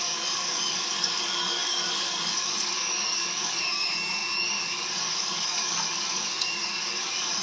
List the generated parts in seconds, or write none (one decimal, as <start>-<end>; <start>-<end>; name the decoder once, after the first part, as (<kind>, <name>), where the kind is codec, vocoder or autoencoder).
0.0-7.4 (codec, DAC)